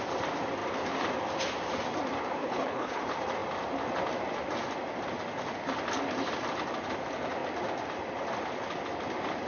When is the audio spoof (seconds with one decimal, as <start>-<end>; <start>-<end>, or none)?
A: 2.4-3.0